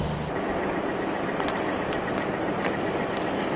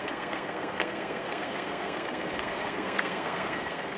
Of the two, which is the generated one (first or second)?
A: second